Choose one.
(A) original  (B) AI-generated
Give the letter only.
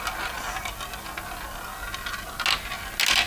A